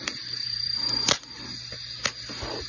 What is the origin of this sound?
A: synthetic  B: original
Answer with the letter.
B